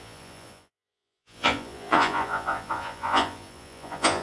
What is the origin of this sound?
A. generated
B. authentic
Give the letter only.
A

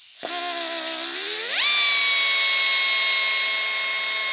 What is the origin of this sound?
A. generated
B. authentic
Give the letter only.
B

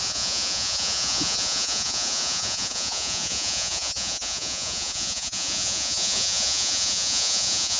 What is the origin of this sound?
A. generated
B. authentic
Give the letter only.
A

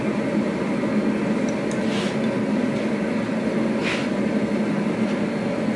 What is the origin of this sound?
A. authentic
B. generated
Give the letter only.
A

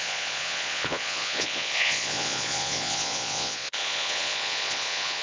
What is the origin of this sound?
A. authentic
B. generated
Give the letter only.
B